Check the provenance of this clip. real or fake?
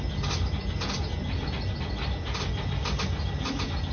real